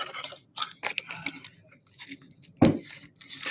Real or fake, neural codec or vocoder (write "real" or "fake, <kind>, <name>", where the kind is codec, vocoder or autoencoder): real